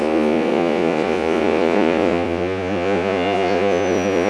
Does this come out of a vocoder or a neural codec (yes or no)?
yes